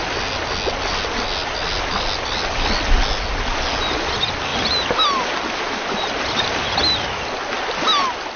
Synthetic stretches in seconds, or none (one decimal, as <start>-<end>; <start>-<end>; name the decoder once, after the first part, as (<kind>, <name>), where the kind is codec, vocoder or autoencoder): none

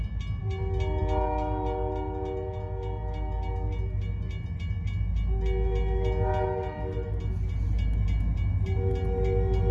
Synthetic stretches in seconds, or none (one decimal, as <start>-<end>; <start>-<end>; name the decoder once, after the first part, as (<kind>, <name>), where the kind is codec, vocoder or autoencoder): none

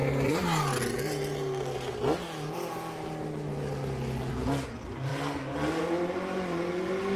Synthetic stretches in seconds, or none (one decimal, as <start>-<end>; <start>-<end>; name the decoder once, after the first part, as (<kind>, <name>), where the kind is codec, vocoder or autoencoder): none

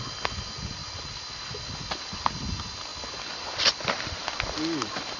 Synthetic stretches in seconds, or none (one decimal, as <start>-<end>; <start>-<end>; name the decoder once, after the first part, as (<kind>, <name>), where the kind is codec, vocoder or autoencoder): none

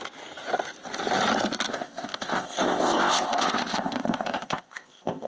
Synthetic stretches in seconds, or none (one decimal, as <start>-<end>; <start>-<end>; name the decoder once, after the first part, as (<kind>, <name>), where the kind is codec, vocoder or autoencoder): 1.7-5.3 (codec, ZipCodec)

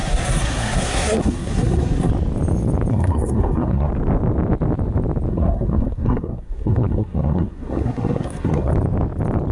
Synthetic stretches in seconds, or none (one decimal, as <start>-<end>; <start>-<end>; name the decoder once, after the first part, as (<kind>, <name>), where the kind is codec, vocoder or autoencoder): 0.0-2.1 (codec, SNAC); 2.9-3.9; 5.3-8.7

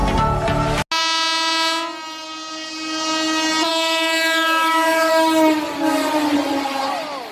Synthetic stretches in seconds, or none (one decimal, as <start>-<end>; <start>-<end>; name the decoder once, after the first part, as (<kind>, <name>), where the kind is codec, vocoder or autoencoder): 3.7-5.1 (autoencoder, DAC-VAE)